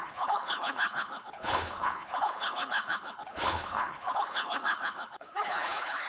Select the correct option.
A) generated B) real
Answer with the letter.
A